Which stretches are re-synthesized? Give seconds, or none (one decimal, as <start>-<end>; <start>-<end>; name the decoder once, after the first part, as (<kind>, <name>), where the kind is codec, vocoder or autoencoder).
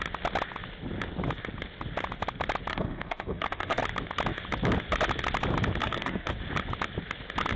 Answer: 2.7-3.8 (codec, SNAC); 5.8-6.3